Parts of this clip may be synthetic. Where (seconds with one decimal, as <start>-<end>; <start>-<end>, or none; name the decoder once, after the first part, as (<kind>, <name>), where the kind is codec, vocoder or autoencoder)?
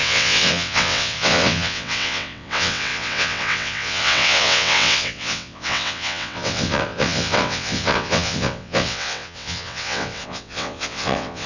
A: 0.0-11.5 (vocoder, WaveNeXt)